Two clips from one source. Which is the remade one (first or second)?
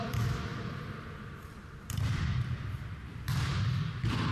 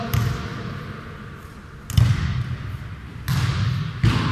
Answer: first